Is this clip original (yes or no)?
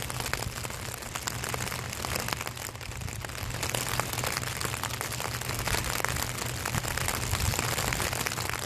yes